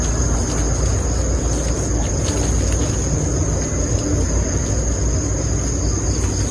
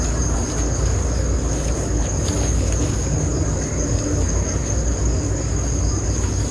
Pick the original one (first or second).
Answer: first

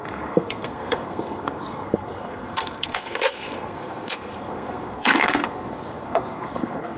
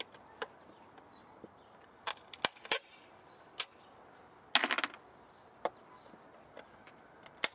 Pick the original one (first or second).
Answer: second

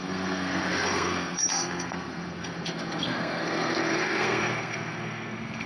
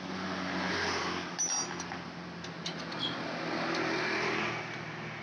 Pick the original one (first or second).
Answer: second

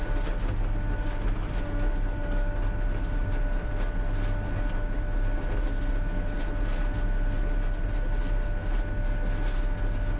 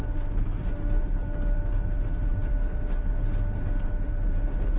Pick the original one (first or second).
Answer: first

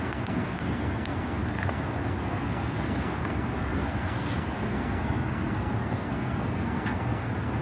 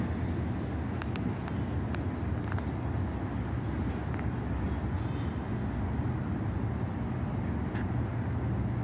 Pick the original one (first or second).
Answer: second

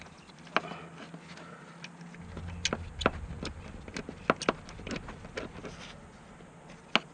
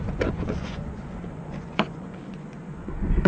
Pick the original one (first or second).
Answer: first